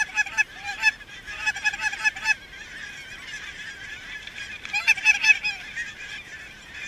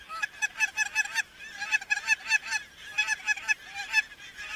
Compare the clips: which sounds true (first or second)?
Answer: second